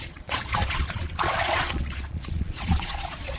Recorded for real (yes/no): no